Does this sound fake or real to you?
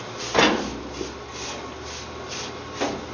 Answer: real